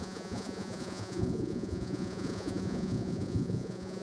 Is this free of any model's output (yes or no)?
no